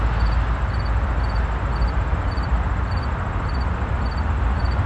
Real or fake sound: real